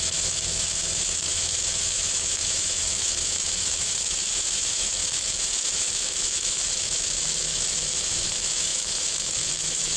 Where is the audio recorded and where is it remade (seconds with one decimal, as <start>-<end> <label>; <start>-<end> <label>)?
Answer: 0.0-10.0 remade